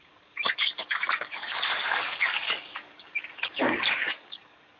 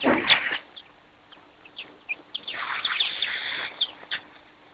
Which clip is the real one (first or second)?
second